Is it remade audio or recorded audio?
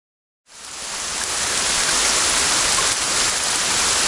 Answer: recorded